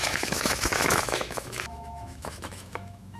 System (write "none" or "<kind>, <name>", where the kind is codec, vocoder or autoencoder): autoencoder, DAC-VAE